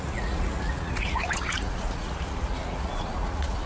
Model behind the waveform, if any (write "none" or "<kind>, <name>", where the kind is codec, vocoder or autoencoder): vocoder, Vocos